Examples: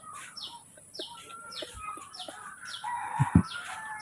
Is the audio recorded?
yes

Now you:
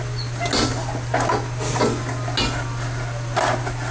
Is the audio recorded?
yes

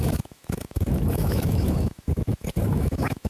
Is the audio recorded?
no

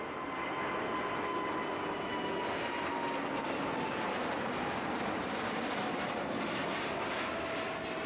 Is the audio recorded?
yes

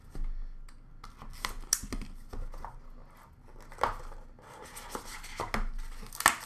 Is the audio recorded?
yes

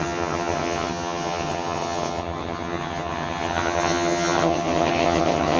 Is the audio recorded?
no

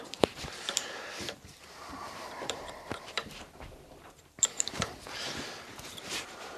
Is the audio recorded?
no